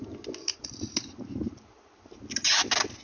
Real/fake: real